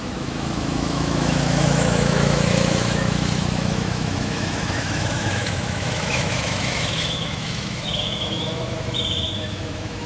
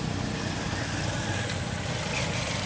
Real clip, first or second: second